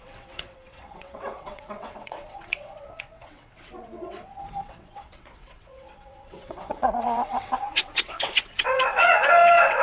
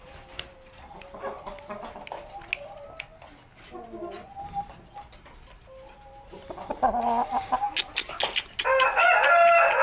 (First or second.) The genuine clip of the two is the second